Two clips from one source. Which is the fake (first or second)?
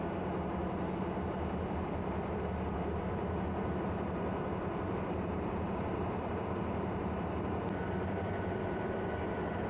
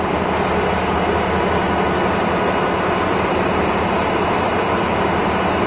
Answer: first